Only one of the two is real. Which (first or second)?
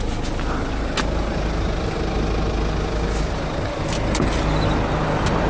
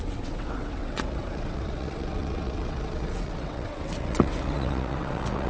first